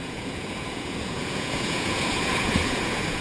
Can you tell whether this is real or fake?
fake